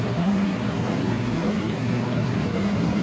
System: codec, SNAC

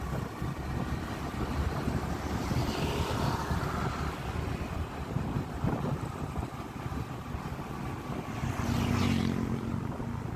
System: none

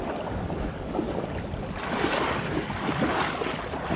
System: none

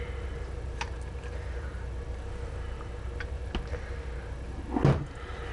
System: none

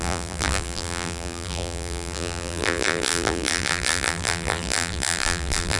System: vocoder, BigVGAN v2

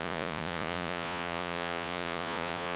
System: vocoder, Vocos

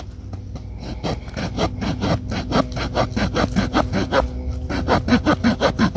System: none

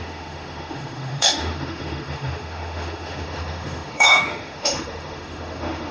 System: autoencoder, DAC-VAE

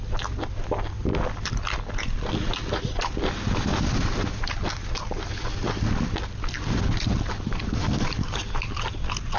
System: none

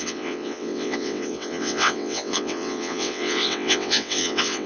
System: vocoder, WaveNeXt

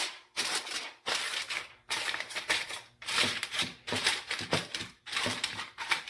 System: vocoder, BigVGAN v2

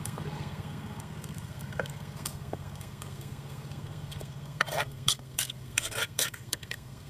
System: codec, SNAC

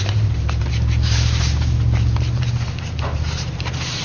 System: vocoder, BigVGAN v2